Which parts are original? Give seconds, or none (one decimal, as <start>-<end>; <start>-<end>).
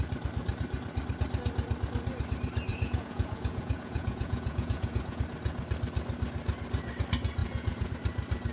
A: 0.0-2.7; 5.2-7.4; 7.9-8.5